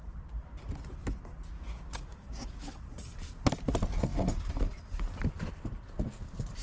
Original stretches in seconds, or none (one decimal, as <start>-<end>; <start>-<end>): 0.0-1.5; 2.7-6.6